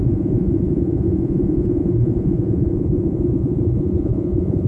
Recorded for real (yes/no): no